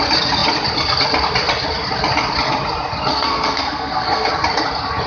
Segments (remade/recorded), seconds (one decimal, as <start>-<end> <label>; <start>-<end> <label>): 0.0-3.1 recorded; 3.1-4.3 remade; 4.3-5.1 recorded